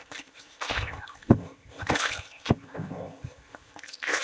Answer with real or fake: fake